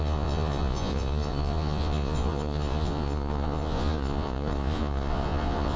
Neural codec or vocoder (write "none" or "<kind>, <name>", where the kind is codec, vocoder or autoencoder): vocoder, Vocos